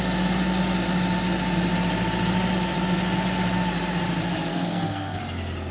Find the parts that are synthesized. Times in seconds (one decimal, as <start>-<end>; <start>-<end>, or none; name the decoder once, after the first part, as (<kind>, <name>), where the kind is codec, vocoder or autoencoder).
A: 4.5-5.2 (codec, SNAC)